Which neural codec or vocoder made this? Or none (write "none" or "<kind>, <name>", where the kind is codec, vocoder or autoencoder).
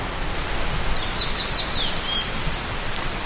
none